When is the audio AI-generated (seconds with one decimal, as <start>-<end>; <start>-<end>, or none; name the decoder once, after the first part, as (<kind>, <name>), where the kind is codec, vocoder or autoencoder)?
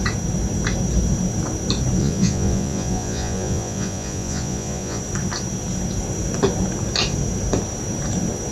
2.0-5.0 (vocoder, Vocos)